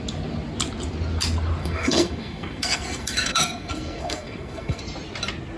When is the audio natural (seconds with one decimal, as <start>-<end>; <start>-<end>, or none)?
0.0-1.6; 4.8-5.6